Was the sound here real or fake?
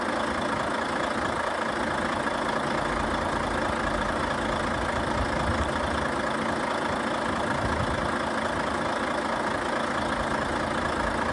real